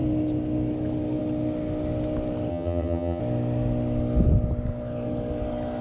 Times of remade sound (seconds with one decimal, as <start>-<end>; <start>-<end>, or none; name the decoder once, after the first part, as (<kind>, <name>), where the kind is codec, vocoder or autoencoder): 2.5-3.2 (vocoder, HiFi-GAN)